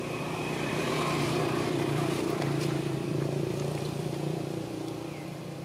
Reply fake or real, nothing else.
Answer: fake